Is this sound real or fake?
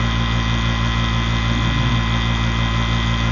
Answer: real